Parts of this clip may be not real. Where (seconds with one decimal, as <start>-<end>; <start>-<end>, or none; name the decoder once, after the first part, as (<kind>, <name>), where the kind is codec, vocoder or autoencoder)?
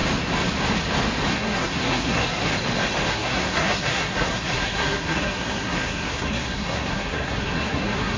1.3-2.5 (codec, SNAC); 3.1-8.2